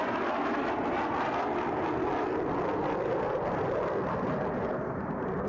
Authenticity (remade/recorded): recorded